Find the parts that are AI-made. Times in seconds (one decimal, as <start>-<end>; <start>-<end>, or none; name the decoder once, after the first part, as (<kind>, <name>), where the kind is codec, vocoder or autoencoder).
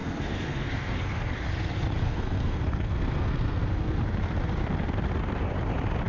0.0-1.2 (codec, SNAC); 2.0-4.0